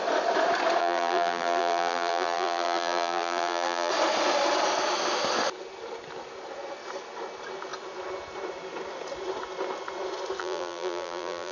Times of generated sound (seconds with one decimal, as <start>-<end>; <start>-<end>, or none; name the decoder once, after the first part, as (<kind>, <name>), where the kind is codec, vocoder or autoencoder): 0.8-3.9 (vocoder, BigVGAN v2); 10.4-11.5